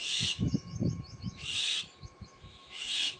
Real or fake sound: fake